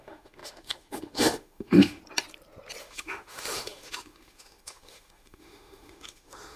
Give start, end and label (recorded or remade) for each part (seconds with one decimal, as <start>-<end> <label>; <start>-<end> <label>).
0.0-2.0 remade; 2.0-2.8 recorded; 2.8-6.6 remade